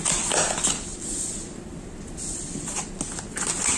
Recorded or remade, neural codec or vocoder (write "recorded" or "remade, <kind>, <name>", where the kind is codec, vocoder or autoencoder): recorded